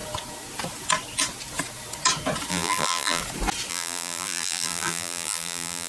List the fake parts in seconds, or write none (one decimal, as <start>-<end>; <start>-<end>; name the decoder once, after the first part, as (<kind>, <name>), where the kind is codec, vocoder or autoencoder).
2.5-3.2 (vocoder, BigVGAN v2); 3.7-5.9

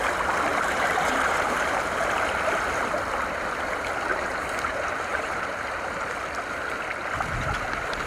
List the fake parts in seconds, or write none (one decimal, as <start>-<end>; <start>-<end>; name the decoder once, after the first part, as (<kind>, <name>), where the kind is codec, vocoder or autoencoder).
0.5-1.8 (vocoder, BigVGAN v2); 4.1-5.4

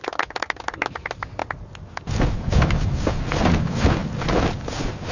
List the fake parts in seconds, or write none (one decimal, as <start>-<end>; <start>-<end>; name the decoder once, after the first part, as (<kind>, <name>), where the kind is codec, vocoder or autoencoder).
4.0-5.1 (vocoder, BigVGAN v2)

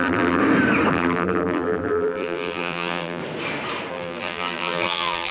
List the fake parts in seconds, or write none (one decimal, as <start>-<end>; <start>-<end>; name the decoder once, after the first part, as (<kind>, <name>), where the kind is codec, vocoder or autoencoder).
0.0-0.4 (vocoder, BigVGAN v2); 0.9-3.2; 3.9-5.3

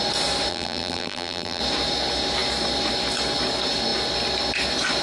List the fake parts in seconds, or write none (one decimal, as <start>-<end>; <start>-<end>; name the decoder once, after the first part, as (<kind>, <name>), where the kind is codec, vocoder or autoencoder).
0.5-1.6 (vocoder, BigVGAN v2)

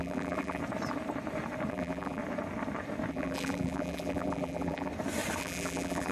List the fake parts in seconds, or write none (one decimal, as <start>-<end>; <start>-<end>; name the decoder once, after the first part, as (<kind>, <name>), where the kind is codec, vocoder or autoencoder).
0.0-0.6 (vocoder, BigVGAN v2); 1.7-2.2; 3.1-4.9; 5.4-6.1

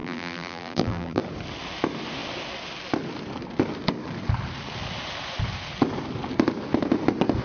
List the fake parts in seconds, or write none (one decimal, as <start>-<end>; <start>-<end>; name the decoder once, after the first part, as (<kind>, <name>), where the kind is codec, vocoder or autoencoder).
0.0-1.2 (vocoder, BigVGAN v2)

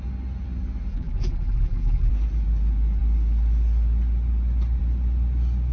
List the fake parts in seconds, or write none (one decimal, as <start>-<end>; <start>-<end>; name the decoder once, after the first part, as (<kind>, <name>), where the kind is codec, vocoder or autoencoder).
0.9-2.1 (vocoder, BigVGAN v2)